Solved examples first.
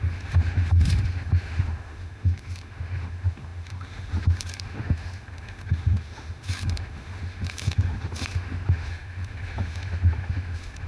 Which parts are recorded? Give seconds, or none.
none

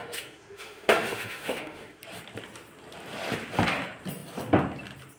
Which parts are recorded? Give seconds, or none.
2.0-5.2